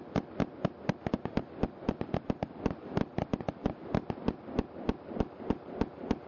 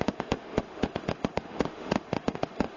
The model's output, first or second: second